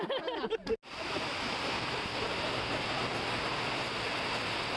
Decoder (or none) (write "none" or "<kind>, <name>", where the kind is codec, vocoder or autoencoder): none